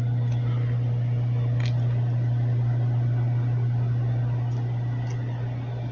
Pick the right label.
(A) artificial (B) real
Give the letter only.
B